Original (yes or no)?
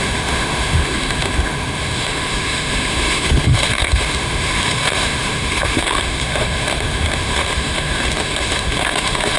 no